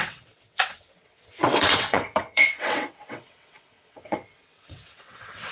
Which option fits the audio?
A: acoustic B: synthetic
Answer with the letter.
B